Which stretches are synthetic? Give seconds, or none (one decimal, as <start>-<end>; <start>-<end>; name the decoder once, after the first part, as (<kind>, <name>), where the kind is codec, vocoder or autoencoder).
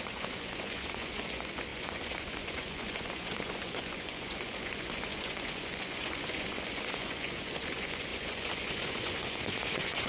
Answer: 0.0-10.1 (vocoder, Vocos)